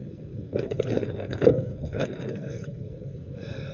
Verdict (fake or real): fake